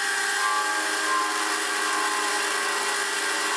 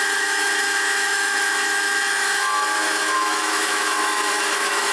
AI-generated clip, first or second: second